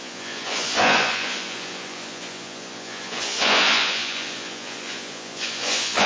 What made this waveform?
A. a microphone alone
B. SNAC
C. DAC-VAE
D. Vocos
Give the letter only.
D